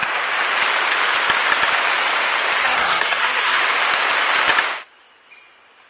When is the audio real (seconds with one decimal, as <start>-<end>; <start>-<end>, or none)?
0.0-2.6; 3.6-5.9